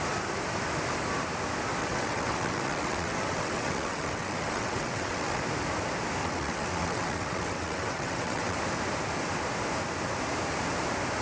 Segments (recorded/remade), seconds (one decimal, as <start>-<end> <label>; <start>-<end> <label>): 0.0-1.8 recorded; 1.8-5.4 remade; 5.4-6.2 recorded; 6.2-8.6 remade; 8.6-11.2 recorded